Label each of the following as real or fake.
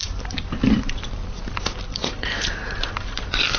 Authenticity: real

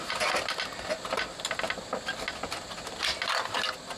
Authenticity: real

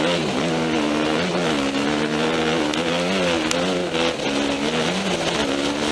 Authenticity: real